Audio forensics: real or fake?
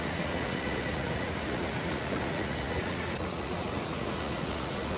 fake